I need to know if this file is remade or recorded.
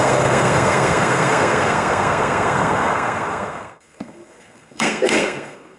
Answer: remade